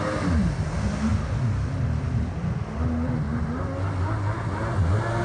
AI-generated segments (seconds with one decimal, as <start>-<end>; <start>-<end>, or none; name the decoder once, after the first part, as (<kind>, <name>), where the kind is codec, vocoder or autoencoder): none